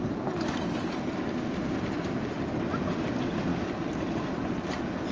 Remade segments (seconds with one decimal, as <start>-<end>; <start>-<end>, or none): none